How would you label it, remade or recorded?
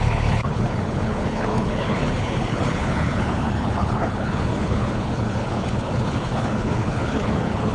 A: remade